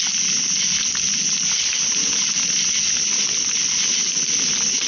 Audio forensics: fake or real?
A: real